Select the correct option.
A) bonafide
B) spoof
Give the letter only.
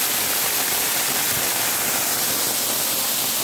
A